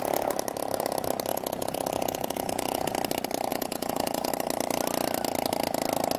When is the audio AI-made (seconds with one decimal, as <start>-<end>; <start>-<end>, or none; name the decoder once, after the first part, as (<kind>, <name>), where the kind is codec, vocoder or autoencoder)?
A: 1.3-2.9 (vocoder, Vocos); 3.5-4.3